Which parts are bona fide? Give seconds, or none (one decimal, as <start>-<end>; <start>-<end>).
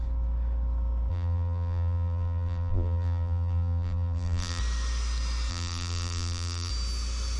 0.0-1.1; 4.6-5.5; 6.7-7.4